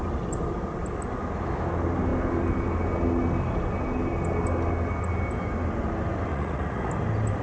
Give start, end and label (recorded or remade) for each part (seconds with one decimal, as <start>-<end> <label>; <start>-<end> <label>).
0.0-6.3 recorded; 6.3-6.9 remade; 6.9-7.4 recorded